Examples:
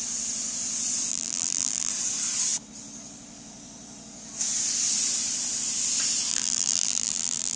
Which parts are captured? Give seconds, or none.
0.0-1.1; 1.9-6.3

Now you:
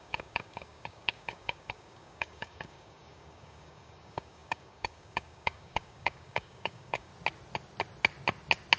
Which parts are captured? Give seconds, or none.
7.1-8.8

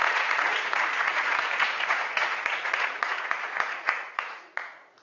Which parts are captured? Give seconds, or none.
none

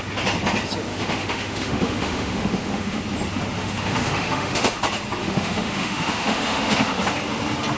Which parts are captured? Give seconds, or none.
0.0-0.9; 3.0-3.6; 4.8-5.2; 7.0-7.8